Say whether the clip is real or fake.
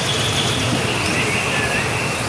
real